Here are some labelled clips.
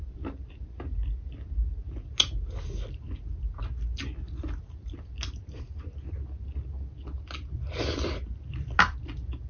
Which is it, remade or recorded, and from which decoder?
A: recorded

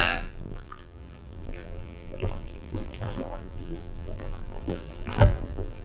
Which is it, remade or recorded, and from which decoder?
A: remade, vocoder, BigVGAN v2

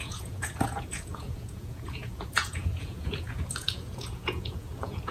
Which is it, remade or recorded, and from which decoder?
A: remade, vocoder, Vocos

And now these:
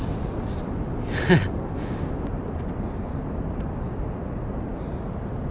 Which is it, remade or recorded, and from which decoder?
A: recorded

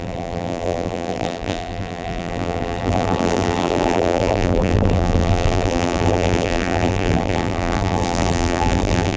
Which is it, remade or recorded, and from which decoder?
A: remade, vocoder, BigVGAN v2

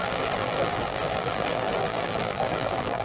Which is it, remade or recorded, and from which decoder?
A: remade, vocoder, BigVGAN v2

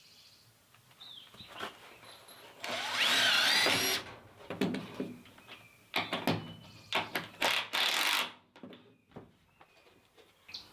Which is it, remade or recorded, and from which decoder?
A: recorded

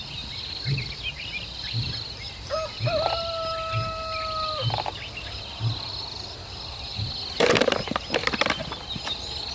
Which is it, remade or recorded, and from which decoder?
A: recorded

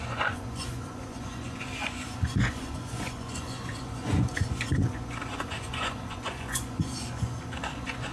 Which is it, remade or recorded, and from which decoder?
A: remade, vocoder, Vocos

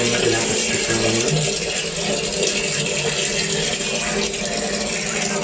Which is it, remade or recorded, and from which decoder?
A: recorded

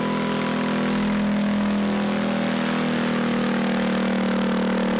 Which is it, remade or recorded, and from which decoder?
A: recorded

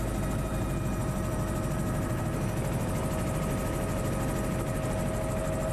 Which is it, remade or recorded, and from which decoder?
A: recorded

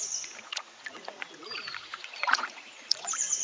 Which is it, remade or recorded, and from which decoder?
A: remade, vocoder, Vocos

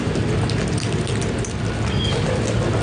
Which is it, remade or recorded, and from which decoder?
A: recorded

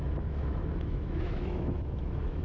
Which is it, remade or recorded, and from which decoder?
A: remade, autoencoder, DAC-VAE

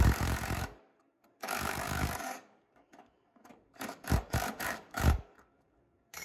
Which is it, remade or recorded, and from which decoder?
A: remade, codec, DAC